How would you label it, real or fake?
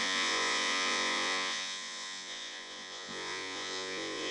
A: fake